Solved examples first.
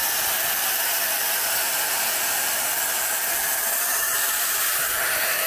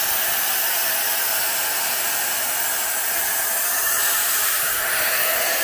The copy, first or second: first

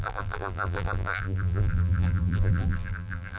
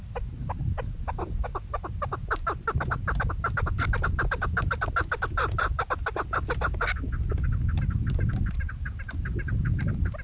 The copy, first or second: first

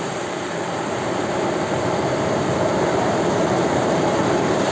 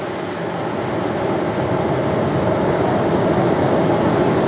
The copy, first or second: first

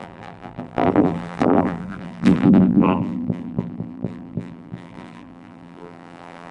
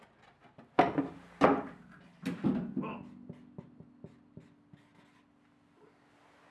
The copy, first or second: first